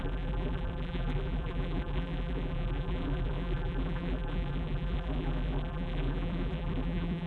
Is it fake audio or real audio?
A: fake